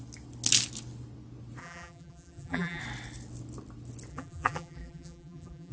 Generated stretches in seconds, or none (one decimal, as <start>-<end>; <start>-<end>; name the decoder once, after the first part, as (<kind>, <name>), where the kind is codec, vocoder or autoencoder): 1.6-2.8 (vocoder, BigVGAN v2); 4.1-5.7